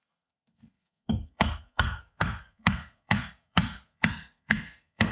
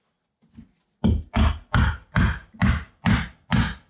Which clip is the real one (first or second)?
second